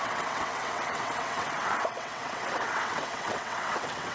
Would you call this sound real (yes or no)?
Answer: no